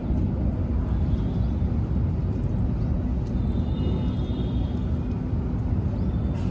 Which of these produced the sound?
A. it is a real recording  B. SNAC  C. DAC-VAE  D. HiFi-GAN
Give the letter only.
A